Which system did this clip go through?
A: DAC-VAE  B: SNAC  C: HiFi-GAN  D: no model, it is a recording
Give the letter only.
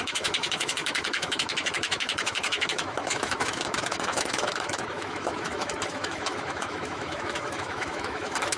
A